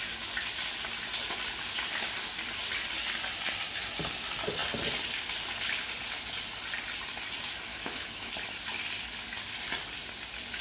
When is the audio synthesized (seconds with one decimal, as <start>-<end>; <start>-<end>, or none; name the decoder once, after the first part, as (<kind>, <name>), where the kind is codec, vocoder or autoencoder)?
7.7-8.3 (autoencoder, DAC-VAE)